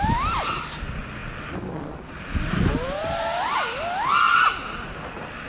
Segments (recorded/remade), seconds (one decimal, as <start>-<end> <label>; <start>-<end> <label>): 0.0-5.5 recorded

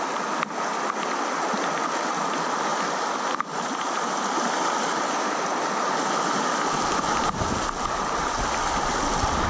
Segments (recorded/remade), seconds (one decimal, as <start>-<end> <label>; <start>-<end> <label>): 0.0-9.5 recorded

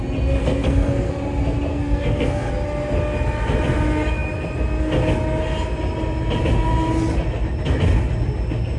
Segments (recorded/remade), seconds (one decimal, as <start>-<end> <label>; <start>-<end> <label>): 0.0-0.4 recorded; 0.4-1.1 remade; 1.1-1.7 recorded; 1.7-2.5 remade; 2.5-8.8 recorded

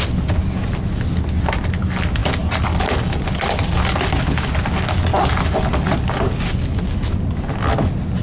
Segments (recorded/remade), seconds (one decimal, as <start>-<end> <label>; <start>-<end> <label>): 0.0-8.2 recorded

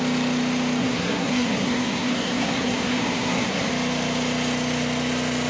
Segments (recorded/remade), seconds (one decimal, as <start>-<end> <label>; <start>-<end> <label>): 0.0-0.8 recorded; 0.8-3.7 remade; 3.7-5.5 recorded

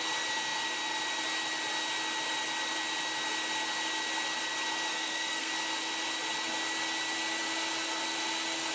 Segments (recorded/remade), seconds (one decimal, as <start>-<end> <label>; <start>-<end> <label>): 0.0-4.9 recorded; 4.9-5.5 remade; 5.5-8.7 recorded

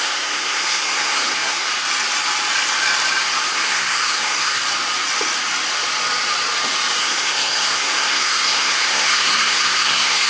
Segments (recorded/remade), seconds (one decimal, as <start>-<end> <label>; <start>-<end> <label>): 0.0-1.7 remade; 1.7-3.5 recorded; 3.5-4.6 remade; 4.6-7.0 recorded; 7.0-10.3 remade

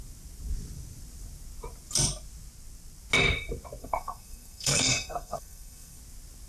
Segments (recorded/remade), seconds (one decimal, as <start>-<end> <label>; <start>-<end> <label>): 0.0-3.8 recorded; 3.8-6.0 remade; 6.0-6.5 recorded